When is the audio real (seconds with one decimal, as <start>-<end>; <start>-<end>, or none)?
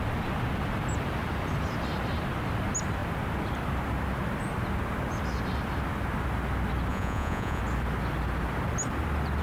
0.0-6.9; 7.6-9.4